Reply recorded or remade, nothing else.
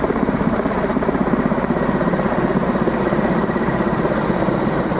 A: recorded